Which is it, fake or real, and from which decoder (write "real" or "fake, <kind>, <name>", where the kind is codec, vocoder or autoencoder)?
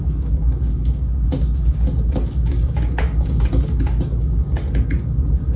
fake, codec, DAC